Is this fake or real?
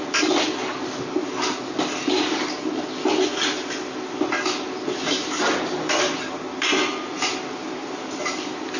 real